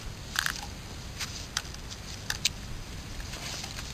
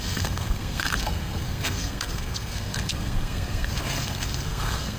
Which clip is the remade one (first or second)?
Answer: second